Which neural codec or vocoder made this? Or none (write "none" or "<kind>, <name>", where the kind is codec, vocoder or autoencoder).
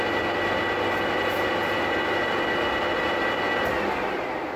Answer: none